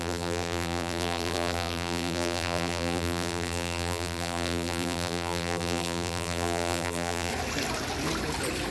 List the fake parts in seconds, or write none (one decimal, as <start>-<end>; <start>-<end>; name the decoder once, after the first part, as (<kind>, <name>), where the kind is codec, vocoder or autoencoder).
0.0-7.3 (vocoder, BigVGAN v2)